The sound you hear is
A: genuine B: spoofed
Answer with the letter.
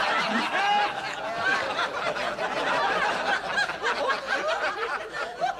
A